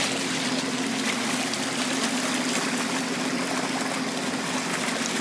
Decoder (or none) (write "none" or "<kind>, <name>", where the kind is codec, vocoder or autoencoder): none